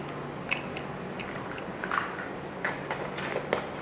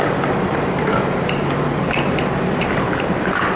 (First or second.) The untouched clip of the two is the first